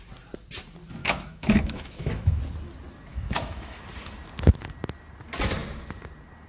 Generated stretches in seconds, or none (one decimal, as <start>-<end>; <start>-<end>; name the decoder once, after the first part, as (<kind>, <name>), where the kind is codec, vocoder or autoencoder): 1.0-2.4 (autoencoder, DAC-VAE); 3.1-3.8